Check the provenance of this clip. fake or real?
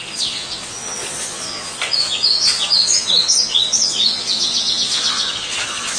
fake